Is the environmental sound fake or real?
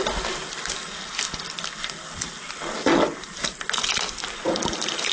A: real